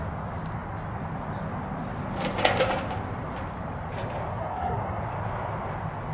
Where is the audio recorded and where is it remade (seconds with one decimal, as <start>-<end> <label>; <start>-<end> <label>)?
0.0-4.3 recorded; 4.3-5.0 remade; 5.0-6.1 recorded